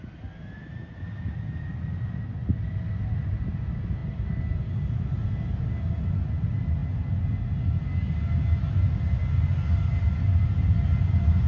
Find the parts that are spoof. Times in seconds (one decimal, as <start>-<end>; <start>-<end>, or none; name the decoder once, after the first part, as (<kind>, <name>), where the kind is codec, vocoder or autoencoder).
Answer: none